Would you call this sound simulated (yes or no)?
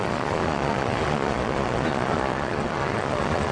yes